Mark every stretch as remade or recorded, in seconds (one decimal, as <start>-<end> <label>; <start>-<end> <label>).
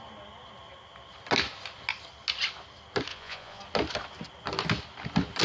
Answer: 0.0-3.1 recorded; 3.1-3.6 remade; 3.6-5.4 recorded